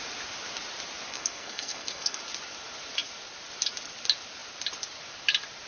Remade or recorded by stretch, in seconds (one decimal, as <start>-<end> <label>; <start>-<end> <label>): 0.0-1.1 recorded; 1.1-2.2 remade; 2.2-5.7 recorded